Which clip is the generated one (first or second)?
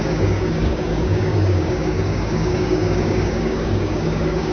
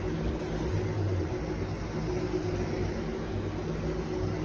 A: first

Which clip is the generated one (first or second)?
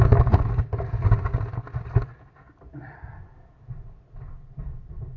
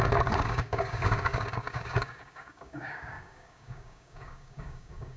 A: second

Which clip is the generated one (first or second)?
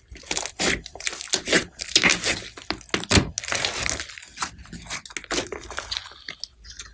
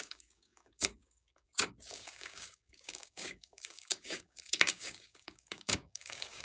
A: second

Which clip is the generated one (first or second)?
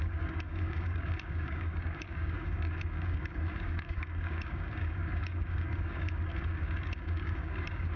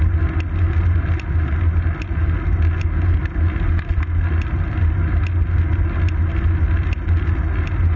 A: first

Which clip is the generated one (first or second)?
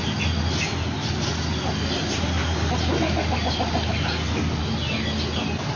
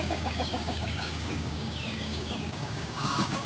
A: second